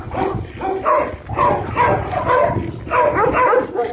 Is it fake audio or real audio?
real